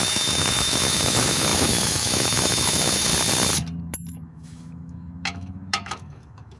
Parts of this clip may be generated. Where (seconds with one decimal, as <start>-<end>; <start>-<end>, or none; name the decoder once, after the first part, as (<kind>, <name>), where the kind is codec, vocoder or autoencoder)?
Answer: 0.0-3.1 (autoencoder, DAC-VAE); 3.8-6.6